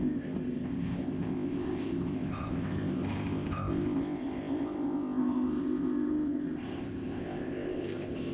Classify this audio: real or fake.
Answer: fake